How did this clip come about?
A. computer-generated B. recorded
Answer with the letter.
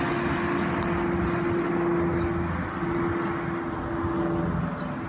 B